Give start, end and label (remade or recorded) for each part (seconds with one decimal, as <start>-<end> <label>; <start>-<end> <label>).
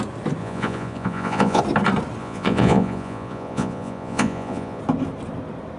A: 0.0-0.4 recorded; 0.4-1.6 remade; 1.6-2.2 recorded; 2.2-4.8 remade; 4.8-5.8 recorded